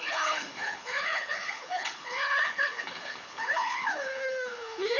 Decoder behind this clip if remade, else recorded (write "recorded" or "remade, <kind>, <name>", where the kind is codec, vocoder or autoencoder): remade, codec, HILCodec